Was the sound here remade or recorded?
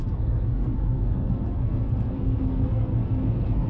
remade